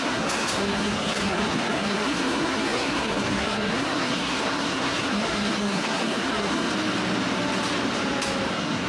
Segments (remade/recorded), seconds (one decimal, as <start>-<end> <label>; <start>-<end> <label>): 0.0-6.7 remade; 6.7-8.5 recorded; 8.5-8.9 remade